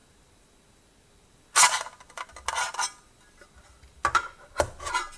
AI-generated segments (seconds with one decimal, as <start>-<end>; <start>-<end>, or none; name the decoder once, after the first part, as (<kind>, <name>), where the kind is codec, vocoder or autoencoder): none